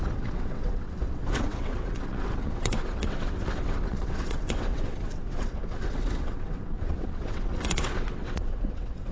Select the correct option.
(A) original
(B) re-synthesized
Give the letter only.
B